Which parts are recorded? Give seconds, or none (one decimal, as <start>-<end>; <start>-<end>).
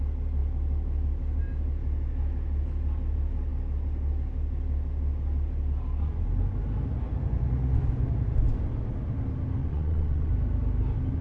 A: 0.0-9.6; 10.3-11.2